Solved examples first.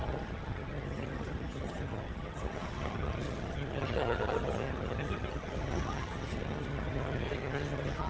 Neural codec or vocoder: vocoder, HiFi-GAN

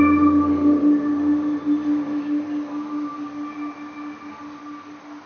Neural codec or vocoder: none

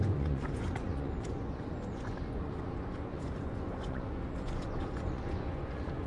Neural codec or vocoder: vocoder, Vocos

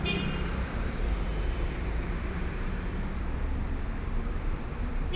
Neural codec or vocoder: vocoder, BigVGAN v2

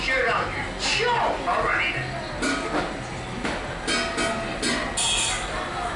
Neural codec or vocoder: none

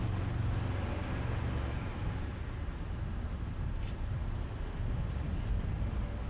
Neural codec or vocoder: none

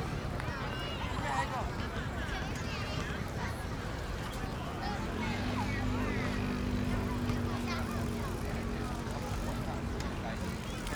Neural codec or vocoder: none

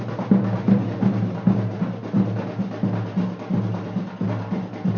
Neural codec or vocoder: none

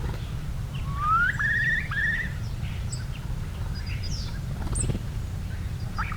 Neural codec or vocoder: none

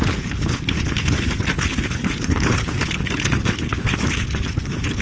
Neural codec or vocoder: codec, HILCodec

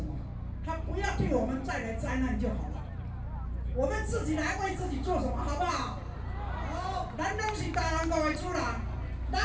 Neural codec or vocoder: none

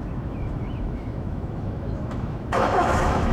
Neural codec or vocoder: autoencoder, DAC-VAE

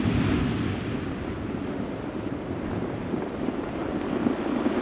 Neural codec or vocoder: none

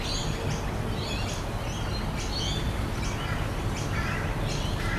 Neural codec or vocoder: none